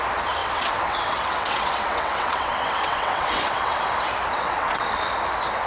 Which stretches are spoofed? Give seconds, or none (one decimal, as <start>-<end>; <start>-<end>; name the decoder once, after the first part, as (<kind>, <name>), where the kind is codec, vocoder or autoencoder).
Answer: 0.4-3.8 (vocoder, WaveNeXt); 4.3-5.0